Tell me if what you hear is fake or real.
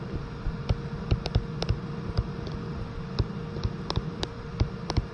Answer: real